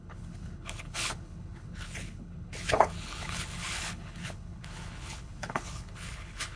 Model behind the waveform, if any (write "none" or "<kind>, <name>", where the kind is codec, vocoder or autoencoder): codec, HILCodec